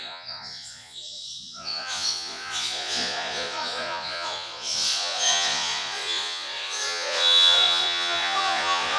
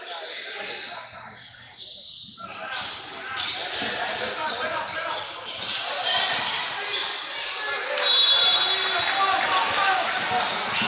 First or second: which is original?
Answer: second